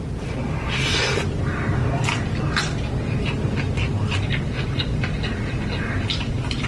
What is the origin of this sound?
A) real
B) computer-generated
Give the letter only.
A